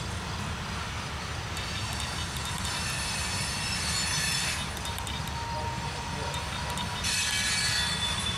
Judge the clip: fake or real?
real